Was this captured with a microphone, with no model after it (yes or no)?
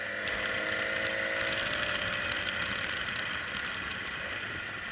yes